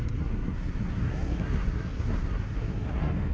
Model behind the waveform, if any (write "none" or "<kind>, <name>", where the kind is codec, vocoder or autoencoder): codec, SNAC